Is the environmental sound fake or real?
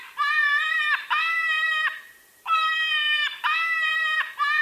fake